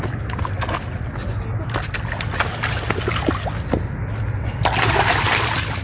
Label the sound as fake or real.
real